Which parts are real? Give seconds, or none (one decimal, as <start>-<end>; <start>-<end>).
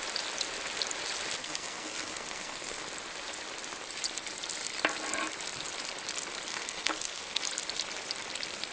0.0-1.4; 2.8-6.5; 7.4-8.7